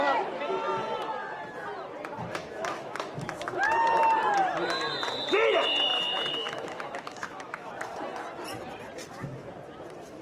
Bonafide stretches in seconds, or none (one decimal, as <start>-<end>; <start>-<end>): 0.0-2.3; 3.6-5.9; 7.7-10.2